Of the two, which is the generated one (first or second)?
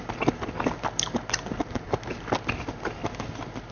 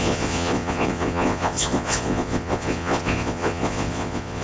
second